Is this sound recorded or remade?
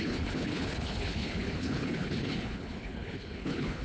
remade